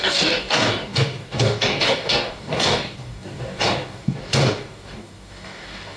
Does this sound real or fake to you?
fake